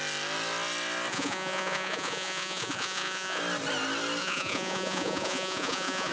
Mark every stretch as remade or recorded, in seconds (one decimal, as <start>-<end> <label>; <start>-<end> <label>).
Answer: 0.0-1.1 recorded; 1.1-3.4 remade; 3.4-4.2 recorded; 4.2-6.1 remade

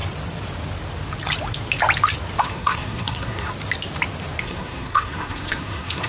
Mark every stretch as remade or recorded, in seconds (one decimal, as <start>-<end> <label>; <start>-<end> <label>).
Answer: 0.0-2.4 recorded; 2.4-3.5 remade; 3.5-4.4 recorded; 4.4-6.1 remade

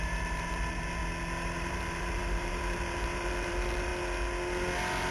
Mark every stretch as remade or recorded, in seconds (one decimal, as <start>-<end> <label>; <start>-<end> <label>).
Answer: 0.0-1.0 remade; 1.0-1.6 recorded; 1.6-3.9 remade; 3.9-5.1 recorded

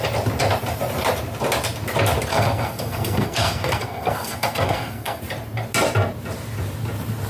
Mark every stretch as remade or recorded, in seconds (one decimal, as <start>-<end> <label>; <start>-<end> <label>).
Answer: 0.0-2.3 recorded; 2.3-5.2 remade; 5.2-7.3 recorded

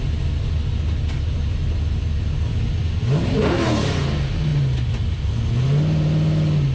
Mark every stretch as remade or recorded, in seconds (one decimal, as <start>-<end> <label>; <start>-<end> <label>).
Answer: 0.0-6.7 recorded

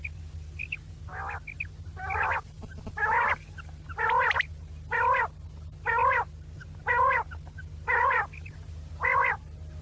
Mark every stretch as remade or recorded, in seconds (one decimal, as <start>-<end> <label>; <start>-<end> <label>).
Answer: 0.0-9.8 recorded